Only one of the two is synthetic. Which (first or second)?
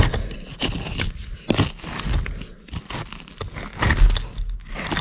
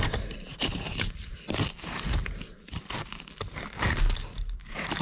second